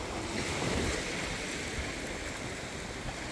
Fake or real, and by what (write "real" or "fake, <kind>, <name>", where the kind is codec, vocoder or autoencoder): real